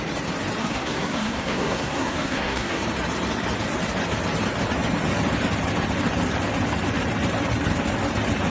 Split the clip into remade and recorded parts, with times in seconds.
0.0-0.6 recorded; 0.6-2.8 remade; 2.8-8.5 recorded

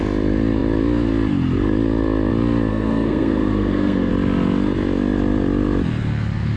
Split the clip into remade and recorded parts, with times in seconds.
0.0-2.7 recorded; 2.7-4.1 remade; 4.1-6.6 recorded

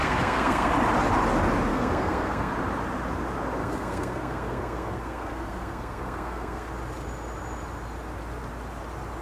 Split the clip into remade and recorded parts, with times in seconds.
0.0-0.7 remade; 0.7-1.7 recorded; 1.7-2.5 remade; 2.5-3.6 recorded; 3.6-6.7 remade; 6.7-9.2 recorded